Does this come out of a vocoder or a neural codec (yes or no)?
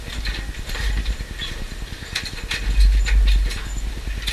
no